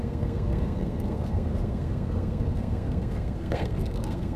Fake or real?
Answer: fake